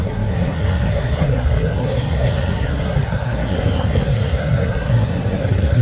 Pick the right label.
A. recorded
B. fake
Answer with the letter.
B